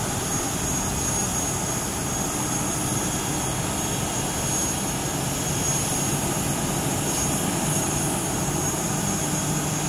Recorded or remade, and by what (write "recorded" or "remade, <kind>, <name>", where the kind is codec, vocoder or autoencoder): recorded